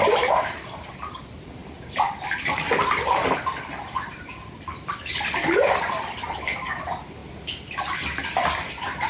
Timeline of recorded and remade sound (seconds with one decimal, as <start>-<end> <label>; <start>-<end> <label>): 0.0-1.6 remade; 1.6-3.5 recorded; 3.5-9.1 remade